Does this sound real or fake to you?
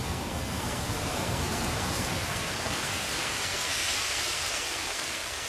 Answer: fake